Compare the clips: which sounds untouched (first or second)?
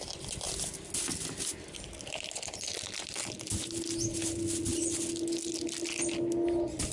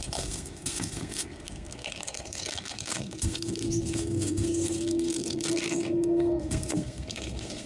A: first